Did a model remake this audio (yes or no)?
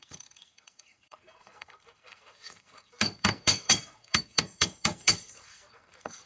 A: yes